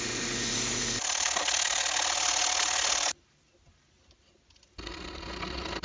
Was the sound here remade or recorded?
recorded